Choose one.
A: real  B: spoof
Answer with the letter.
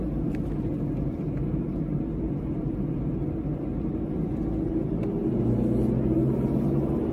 A